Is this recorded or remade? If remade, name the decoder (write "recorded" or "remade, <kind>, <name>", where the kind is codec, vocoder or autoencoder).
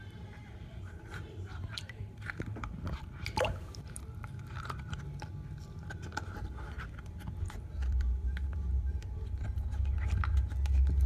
remade, vocoder, BigVGAN v2